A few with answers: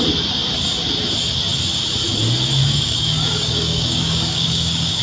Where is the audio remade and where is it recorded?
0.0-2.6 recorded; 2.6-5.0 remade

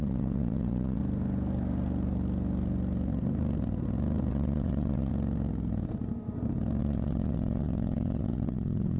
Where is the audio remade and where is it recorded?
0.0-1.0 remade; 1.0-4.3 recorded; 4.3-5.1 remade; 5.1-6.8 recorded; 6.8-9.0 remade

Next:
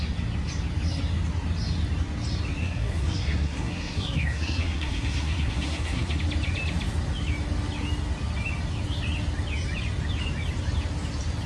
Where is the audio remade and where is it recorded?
0.0-2.6 recorded; 2.6-6.2 remade; 6.2-11.5 recorded